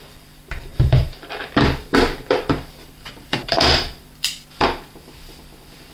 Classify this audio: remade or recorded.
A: remade